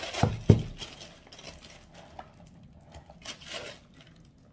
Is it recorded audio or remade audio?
recorded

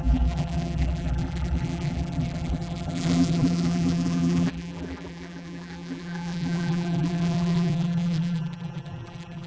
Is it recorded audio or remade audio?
remade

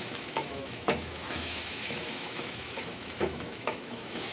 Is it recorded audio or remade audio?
remade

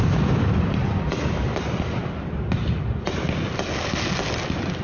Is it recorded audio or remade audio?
recorded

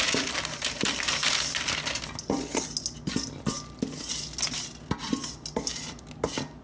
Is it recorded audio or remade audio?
recorded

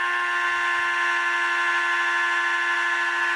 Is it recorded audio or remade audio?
recorded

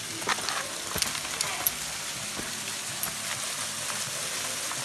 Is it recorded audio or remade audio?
recorded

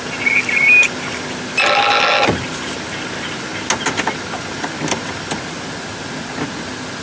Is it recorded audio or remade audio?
recorded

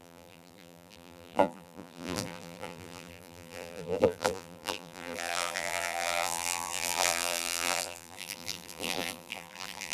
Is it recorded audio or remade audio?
remade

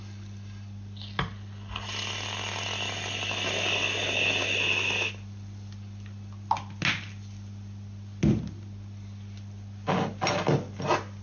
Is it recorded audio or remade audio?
recorded